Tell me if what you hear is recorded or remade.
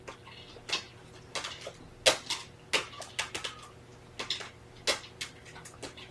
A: recorded